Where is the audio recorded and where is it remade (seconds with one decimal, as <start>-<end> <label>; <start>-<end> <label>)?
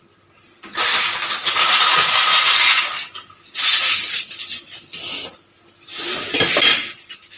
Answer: 0.0-2.3 recorded; 2.3-2.8 remade; 2.8-7.4 recorded